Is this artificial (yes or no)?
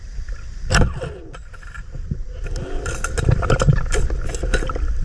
no